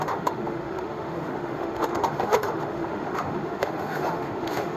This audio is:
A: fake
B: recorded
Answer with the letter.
A